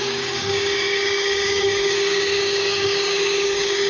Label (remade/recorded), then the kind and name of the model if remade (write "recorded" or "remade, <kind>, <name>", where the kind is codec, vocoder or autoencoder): remade, codec, DAC